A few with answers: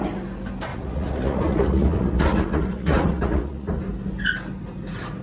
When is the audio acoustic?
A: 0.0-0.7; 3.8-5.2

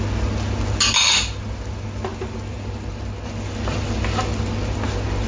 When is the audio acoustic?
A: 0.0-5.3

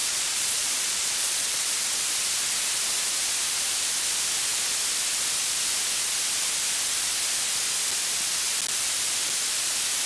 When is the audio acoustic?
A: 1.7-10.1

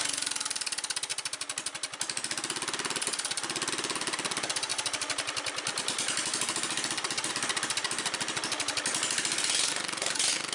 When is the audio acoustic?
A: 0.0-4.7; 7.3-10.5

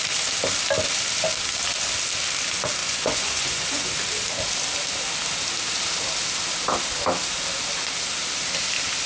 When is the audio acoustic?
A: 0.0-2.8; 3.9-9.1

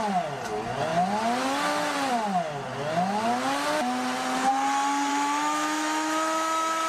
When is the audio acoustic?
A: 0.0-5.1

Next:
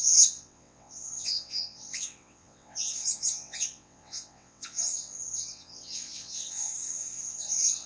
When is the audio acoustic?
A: none

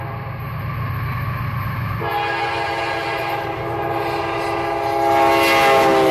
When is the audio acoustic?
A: 0.0-6.1